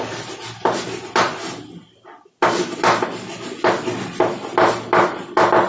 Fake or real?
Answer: real